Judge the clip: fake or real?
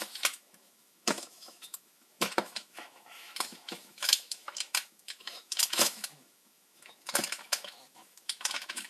fake